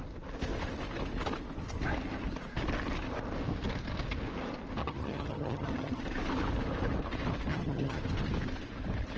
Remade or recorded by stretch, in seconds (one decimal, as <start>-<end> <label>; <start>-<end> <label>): 0.0-4.8 recorded; 4.8-6.0 remade; 6.0-7.5 recorded; 7.5-8.0 remade; 8.0-9.2 recorded